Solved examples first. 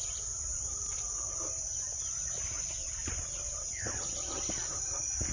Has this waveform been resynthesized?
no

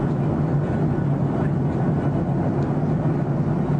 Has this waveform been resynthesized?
no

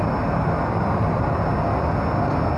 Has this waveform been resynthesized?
no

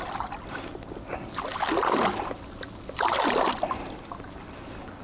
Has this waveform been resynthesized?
no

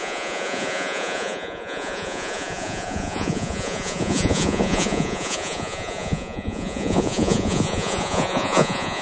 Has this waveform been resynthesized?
yes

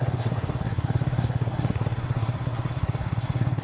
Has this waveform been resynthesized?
yes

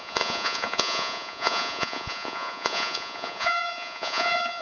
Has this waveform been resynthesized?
yes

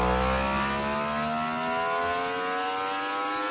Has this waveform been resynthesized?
no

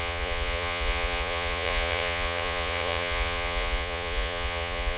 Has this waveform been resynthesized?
yes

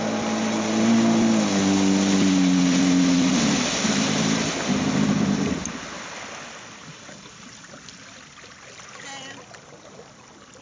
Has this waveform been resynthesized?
no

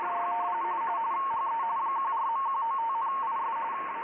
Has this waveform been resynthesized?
no